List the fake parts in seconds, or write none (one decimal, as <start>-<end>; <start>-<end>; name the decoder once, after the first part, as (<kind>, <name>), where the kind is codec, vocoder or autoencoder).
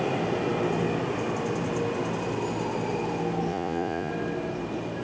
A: 3.5-4.1 (vocoder, Vocos)